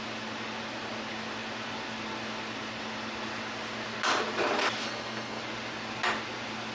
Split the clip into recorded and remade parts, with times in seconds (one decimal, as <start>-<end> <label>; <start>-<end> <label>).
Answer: 0.0-4.8 recorded; 4.8-5.4 remade; 5.4-6.7 recorded